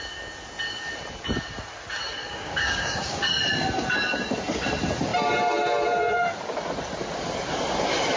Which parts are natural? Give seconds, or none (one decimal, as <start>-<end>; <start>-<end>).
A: 0.0-2.2; 3.4-8.2